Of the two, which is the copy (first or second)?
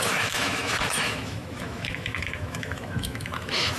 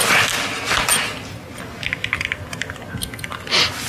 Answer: first